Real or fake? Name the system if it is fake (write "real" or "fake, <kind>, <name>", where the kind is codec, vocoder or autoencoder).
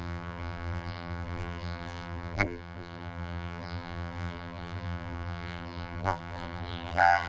fake, vocoder, BigVGAN v2